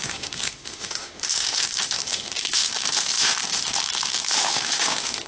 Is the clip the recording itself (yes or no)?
no